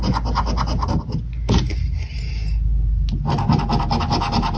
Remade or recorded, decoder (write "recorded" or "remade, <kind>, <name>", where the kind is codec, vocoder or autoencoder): recorded